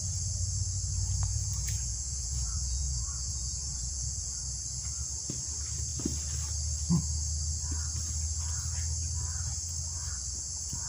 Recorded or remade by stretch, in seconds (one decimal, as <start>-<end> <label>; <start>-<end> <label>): 0.0-1.3 recorded; 1.3-4.4 remade; 4.4-10.9 recorded